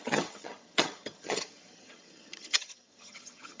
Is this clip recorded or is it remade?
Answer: remade